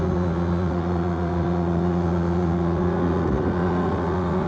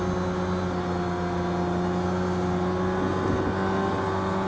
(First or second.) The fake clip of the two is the first